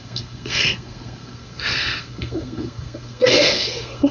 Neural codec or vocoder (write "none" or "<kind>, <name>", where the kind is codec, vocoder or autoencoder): codec, SNAC